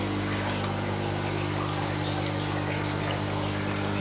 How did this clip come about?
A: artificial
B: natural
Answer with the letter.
B